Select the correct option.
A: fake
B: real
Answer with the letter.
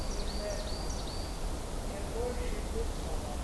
B